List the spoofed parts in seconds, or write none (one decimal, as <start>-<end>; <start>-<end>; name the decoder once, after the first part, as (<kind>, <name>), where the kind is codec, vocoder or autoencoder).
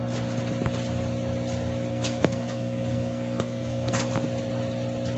1.9-4.1 (codec, SNAC)